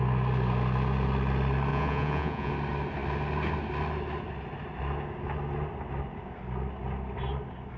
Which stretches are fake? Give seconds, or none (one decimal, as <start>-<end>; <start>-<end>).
1.7-2.5